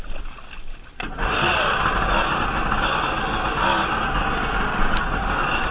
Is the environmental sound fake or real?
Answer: real